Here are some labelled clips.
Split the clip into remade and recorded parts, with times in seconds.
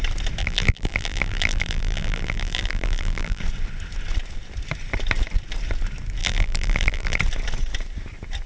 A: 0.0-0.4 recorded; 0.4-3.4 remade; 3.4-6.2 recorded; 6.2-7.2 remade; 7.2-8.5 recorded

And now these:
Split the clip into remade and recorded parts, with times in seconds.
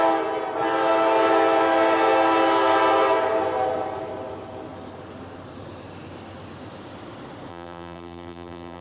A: 0.0-7.5 recorded; 7.5-8.8 remade